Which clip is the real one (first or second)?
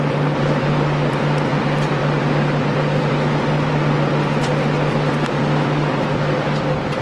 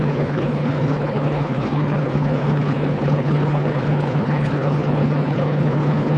first